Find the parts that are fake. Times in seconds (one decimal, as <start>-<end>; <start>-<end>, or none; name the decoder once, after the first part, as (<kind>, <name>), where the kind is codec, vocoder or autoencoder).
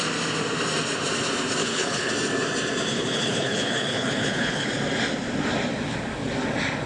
1.6-2.1 (codec, HILCodec); 2.9-4.7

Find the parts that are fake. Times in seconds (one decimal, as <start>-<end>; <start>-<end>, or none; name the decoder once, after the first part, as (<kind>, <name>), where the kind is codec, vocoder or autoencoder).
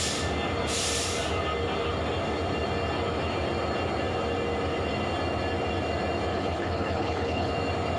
6.3-7.5 (codec, HILCodec)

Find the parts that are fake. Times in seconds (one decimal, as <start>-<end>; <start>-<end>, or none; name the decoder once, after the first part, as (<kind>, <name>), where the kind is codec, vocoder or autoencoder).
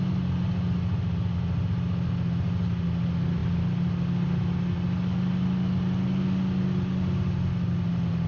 none